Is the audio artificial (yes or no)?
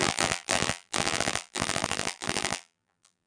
yes